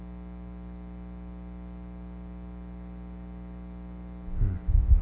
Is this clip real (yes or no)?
yes